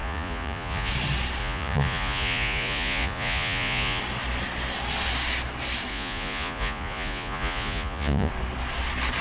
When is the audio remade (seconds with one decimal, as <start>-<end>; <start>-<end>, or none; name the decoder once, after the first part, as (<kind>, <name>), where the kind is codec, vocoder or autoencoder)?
0.0-0.9 (vocoder, Vocos); 1.4-4.0; 5.9-8.3